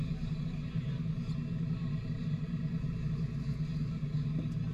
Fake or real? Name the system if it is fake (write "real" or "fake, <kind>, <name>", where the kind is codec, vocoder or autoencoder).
real